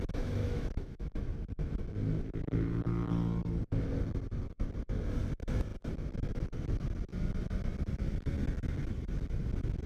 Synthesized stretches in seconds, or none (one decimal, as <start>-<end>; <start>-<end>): 0.4-1.1